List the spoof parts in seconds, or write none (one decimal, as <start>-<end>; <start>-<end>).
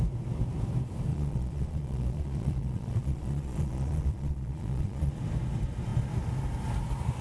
1.1-5.1